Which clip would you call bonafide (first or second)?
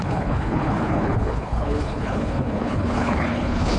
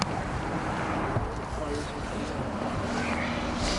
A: second